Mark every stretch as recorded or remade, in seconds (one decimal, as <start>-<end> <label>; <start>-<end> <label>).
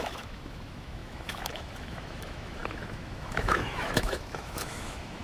0.0-5.2 remade